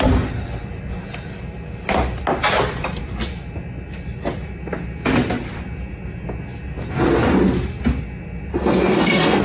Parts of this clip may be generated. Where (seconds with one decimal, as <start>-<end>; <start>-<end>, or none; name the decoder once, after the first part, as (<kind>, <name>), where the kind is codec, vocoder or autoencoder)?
8.5-9.4 (codec, SNAC)